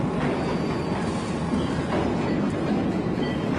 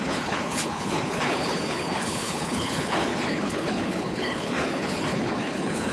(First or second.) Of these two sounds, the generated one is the second